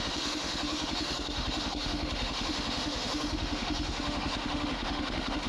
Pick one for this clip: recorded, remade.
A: remade